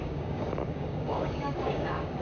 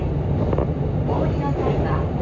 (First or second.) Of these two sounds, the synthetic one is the first